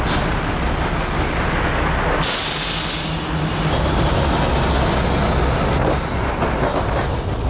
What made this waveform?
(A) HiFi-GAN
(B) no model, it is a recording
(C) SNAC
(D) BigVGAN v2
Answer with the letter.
B